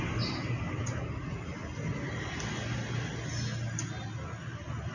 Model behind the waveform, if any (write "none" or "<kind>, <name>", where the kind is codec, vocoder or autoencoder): none